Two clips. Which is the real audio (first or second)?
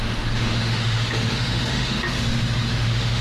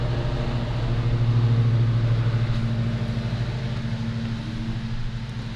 second